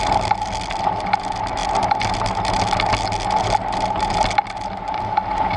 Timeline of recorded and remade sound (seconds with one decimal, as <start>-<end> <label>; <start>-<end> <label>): 0.0-5.6 recorded